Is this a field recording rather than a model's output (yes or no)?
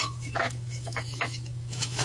no